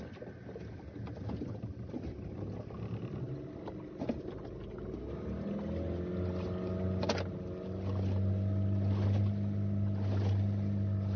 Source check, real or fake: real